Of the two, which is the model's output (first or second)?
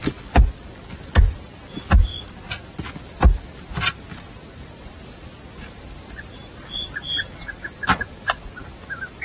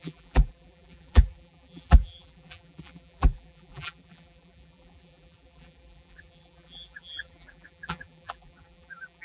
second